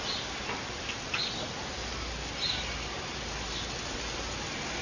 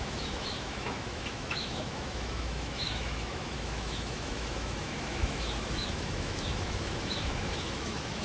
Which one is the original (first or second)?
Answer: first